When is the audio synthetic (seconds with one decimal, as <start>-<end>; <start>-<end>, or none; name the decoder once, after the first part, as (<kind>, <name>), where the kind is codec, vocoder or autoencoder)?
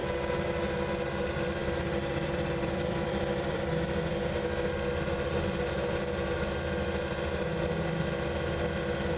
1.6-3.6 (vocoder, BigVGAN v2)